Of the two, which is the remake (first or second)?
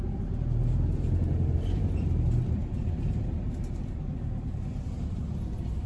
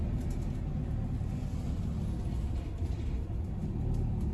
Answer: first